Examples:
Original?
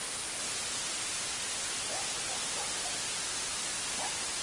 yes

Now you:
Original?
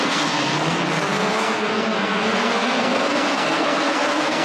no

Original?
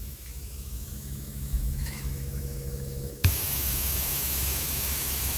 no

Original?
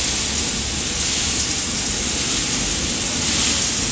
yes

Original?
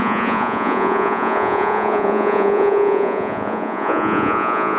no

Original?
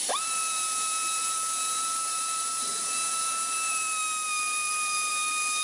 no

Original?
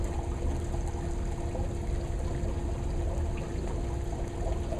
yes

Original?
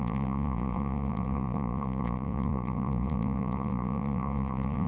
no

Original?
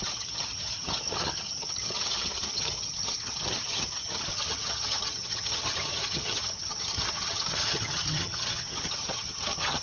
no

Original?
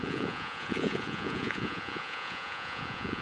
no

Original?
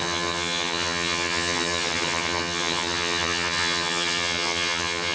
no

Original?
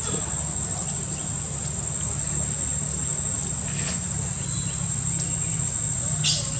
yes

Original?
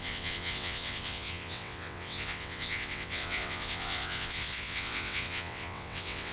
no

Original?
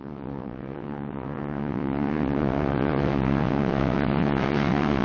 no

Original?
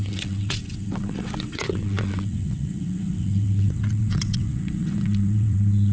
no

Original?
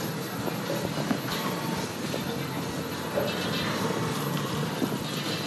yes